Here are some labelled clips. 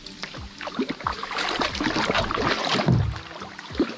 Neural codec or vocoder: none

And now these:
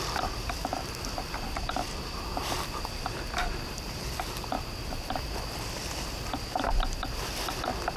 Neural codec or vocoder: vocoder, BigVGAN v2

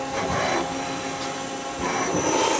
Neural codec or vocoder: none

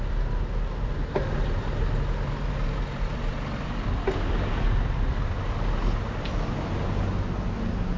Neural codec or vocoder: none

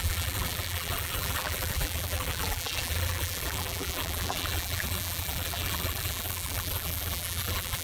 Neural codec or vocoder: vocoder, BigVGAN v2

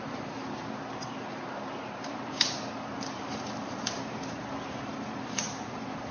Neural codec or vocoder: vocoder, BigVGAN v2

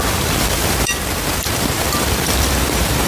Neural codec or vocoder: vocoder, BigVGAN v2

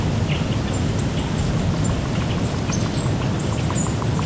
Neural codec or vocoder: none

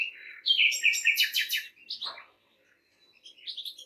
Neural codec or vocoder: none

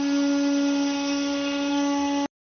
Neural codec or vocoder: none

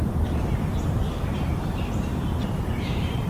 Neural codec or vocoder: vocoder, BigVGAN v2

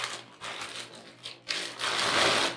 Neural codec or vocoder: none